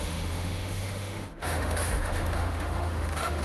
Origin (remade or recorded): remade